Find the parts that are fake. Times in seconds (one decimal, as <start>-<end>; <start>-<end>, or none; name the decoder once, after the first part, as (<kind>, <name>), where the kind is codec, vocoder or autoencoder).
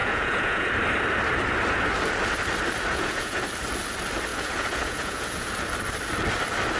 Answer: 0.0-0.7 (vocoder, Vocos); 2.9-3.4; 4.3-5.5